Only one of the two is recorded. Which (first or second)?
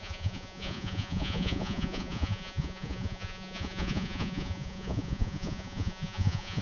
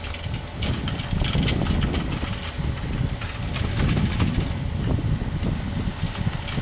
second